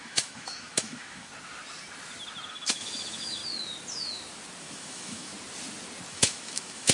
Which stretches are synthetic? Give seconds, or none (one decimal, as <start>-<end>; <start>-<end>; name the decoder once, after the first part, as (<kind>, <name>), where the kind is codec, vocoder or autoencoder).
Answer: 0.0-1.3 (autoencoder, DAC-VAE); 2.5-3.4; 4.6-5.3; 6.1-6.9